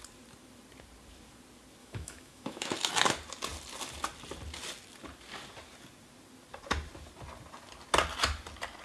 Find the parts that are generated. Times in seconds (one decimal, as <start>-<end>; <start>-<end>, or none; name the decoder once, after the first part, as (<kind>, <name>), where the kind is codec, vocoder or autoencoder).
1.8-2.9 (autoencoder, DAC-VAE)